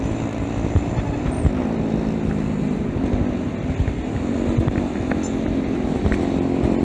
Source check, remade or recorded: recorded